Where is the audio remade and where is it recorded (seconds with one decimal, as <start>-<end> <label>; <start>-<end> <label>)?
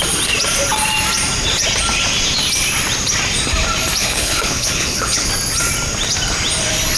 0.0-4.0 recorded; 4.0-5.3 remade; 5.3-7.0 recorded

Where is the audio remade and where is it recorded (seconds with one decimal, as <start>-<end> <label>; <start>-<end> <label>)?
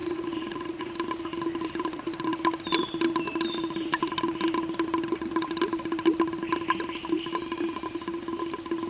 0.0-0.9 remade; 0.9-8.9 recorded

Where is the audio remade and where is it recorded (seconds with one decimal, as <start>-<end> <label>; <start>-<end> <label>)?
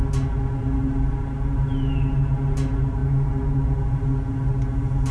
0.0-5.1 recorded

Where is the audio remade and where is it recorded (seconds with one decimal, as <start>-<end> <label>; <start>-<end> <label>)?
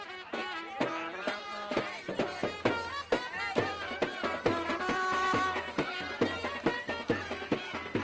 0.0-8.0 recorded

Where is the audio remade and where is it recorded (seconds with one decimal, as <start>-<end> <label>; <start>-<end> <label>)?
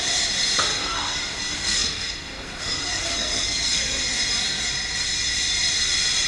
0.0-0.7 recorded; 0.7-4.0 remade; 4.0-6.3 recorded